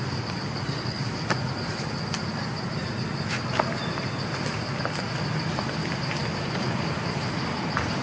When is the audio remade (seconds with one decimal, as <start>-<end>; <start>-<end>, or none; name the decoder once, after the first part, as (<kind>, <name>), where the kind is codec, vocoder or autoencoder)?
none